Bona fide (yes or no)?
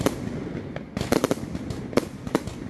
yes